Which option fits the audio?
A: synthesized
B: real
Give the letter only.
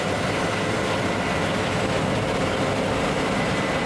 B